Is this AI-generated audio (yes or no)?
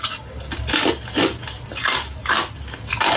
no